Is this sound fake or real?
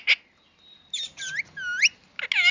real